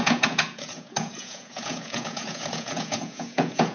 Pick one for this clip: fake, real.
fake